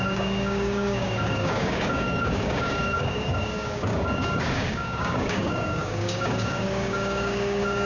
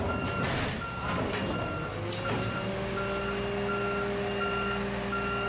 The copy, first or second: first